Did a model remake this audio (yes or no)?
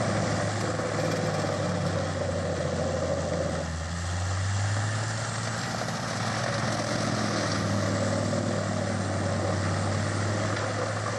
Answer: no